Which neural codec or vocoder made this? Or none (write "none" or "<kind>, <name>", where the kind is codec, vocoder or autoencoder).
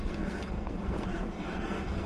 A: codec, SNAC